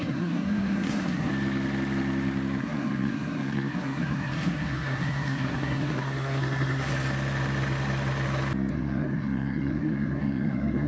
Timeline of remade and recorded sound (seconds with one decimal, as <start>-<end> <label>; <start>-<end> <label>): 0.0-1.3 remade; 1.3-2.6 recorded; 2.6-6.9 remade; 6.9-8.7 recorded; 8.7-10.9 remade